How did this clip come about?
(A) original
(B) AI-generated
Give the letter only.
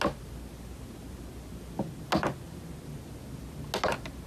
A